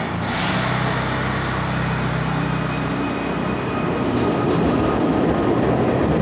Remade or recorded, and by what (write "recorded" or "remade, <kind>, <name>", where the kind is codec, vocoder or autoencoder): recorded